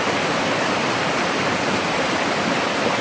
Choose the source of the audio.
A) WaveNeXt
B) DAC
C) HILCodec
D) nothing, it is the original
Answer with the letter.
D